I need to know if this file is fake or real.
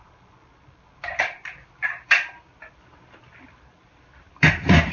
fake